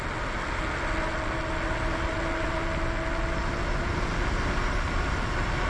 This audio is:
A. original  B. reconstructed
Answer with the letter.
A